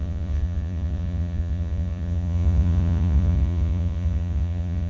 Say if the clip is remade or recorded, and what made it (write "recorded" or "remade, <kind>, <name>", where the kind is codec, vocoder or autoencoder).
remade, vocoder, Vocos